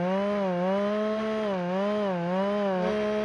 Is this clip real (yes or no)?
yes